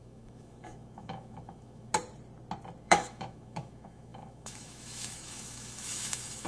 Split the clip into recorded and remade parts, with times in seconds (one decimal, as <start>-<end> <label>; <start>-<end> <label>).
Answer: 0.0-1.9 remade; 1.9-2.8 recorded; 2.8-6.5 remade